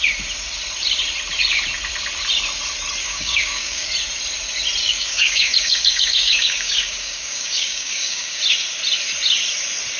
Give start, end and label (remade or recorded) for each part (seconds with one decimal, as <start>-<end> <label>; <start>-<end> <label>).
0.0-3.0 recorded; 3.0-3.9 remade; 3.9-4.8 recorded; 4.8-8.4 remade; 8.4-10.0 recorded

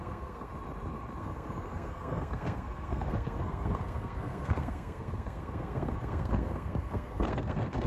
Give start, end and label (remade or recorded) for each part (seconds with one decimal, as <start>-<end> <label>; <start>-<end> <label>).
0.0-0.5 remade; 0.5-1.2 recorded; 1.2-7.9 remade

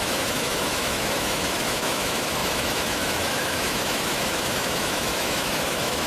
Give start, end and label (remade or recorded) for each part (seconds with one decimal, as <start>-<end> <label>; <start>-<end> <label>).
0.0-6.1 remade

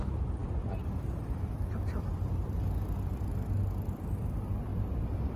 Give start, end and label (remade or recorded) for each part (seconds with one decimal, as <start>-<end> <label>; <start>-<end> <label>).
0.0-4.7 recorded; 4.7-5.4 remade

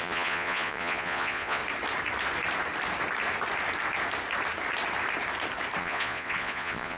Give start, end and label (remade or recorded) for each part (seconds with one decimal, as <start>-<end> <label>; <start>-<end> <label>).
0.0-1.6 remade; 1.6-5.8 recorded; 5.8-7.0 remade

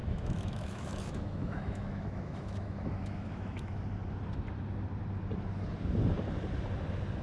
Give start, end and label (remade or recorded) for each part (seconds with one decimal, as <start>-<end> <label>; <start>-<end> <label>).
0.0-3.8 remade; 3.8-7.2 recorded

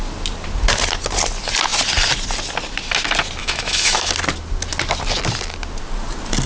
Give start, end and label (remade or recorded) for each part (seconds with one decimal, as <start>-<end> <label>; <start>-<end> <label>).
0.0-3.4 recorded; 3.4-4.1 remade; 4.1-6.5 recorded